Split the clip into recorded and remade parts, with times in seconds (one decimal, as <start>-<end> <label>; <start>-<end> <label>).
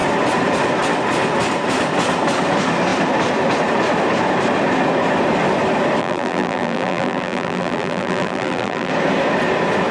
0.0-6.0 recorded; 6.0-8.9 remade; 8.9-9.9 recorded